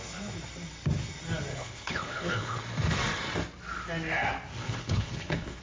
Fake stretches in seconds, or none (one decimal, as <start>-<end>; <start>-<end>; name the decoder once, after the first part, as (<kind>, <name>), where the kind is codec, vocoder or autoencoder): 1.5-2.6 (codec, HILCodec); 4.6-5.6